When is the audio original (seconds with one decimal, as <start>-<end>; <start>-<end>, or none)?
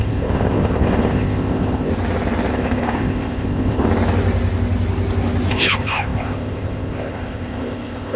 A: 1.9-2.5; 3.9-5.5